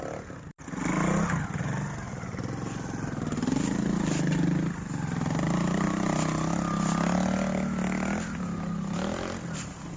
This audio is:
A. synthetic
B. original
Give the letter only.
B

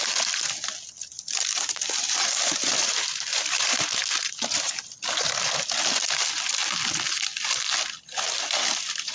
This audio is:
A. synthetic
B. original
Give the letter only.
B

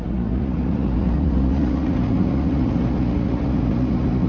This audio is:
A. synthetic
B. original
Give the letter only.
A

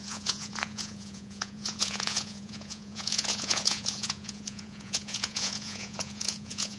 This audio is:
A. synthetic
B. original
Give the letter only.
A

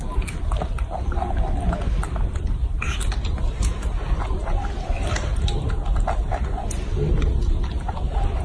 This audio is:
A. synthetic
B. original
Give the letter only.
B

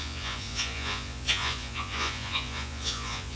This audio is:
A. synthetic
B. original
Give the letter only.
A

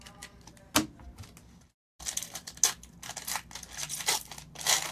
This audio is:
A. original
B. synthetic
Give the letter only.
A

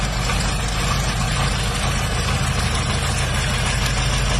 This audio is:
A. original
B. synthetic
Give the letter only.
A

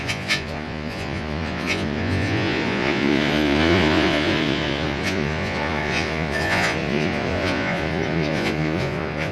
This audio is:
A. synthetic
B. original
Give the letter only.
A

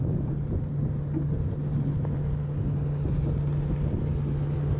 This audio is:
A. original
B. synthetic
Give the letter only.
A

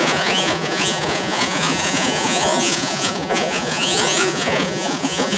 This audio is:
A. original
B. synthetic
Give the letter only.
B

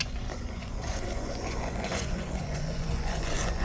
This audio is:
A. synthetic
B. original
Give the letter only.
A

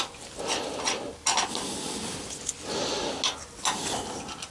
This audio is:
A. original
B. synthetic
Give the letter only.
A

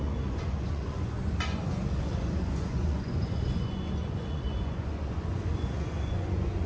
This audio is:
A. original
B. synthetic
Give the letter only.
B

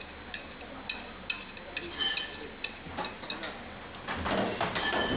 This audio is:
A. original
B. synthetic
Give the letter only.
A